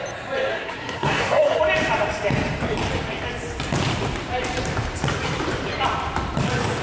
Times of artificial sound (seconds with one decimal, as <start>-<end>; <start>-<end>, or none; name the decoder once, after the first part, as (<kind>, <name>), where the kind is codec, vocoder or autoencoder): 0.5-1.6 (codec, SNAC)